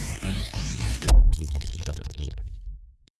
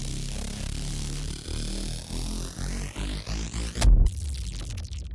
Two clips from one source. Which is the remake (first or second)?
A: first